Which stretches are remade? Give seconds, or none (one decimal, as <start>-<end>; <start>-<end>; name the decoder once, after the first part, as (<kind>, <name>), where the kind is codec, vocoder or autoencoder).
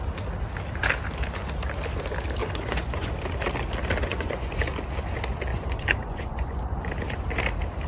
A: 2.4-3.1 (vocoder, Vocos); 4.1-4.6; 5.5-6.6